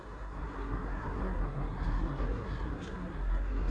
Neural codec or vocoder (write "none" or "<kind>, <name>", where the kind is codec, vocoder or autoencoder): codec, SNAC